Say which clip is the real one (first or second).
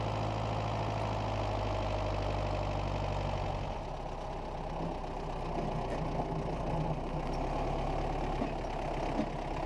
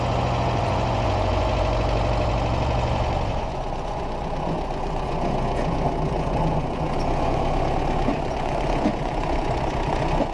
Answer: first